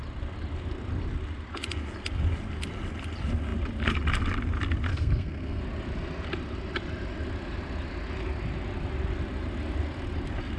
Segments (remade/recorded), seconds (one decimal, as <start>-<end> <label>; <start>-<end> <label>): 0.0-4.9 recorded; 4.9-5.6 remade; 5.6-10.6 recorded